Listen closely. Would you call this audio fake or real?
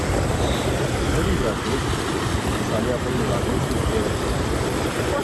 fake